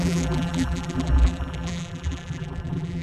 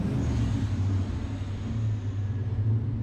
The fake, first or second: first